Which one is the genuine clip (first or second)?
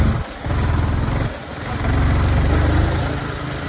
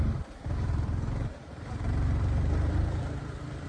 first